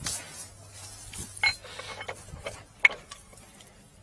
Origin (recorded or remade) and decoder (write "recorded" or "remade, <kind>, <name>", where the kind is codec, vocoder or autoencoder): recorded